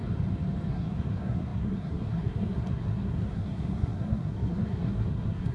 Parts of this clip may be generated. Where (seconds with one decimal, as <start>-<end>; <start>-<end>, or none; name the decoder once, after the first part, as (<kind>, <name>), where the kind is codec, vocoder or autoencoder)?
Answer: 0.7-5.5 (codec, SNAC)